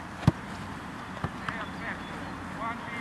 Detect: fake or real real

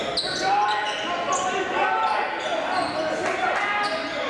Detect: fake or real real